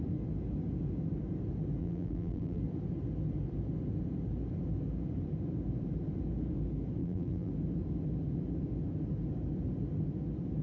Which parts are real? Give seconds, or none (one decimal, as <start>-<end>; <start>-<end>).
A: 0.0-1.8; 2.6-7.0; 7.5-10.6